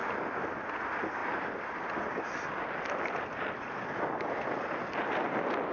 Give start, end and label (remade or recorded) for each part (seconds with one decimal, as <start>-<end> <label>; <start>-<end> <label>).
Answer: 0.0-5.7 recorded